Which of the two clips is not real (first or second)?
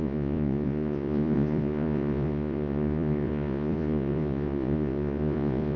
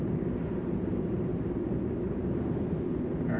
first